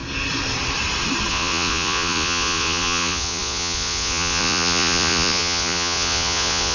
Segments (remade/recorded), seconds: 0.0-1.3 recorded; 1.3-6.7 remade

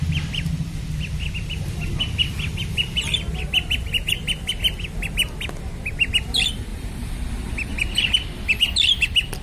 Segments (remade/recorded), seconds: 0.0-6.7 recorded; 6.7-7.3 remade; 7.3-9.4 recorded

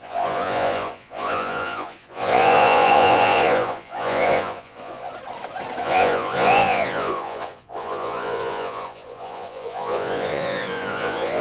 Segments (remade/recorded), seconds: 0.0-5.1 remade; 5.1-5.8 recorded; 5.8-11.4 remade

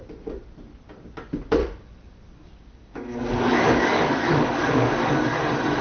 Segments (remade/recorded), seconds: 0.0-1.6 recorded; 1.6-5.1 remade; 5.1-5.8 recorded

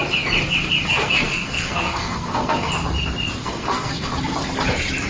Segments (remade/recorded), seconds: 0.0-0.9 recorded; 0.9-2.7 remade; 2.7-3.4 recorded; 3.4-4.1 remade; 4.1-5.1 recorded

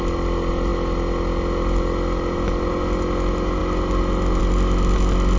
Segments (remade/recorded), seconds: 0.0-5.4 recorded

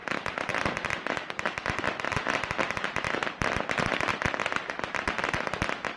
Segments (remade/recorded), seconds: 0.0-4.1 remade; 4.1-4.7 recorded; 4.7-6.0 remade

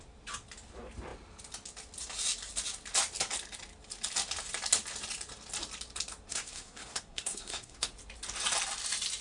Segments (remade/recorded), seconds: 0.0-6.3 recorded; 6.3-7.9 remade; 7.9-9.2 recorded